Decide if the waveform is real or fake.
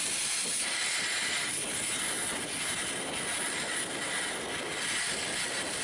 real